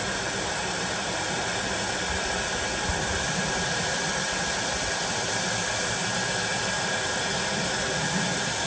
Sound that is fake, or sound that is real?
real